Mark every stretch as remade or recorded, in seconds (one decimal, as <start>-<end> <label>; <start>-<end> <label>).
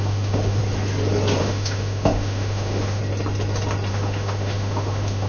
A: 0.0-0.6 remade; 0.6-1.4 recorded; 1.4-3.0 remade; 3.0-3.9 recorded; 3.9-5.3 remade